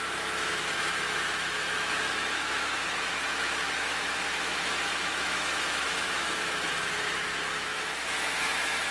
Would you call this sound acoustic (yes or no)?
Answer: no